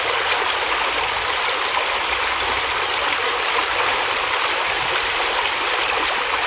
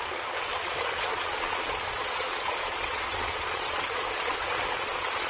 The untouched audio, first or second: first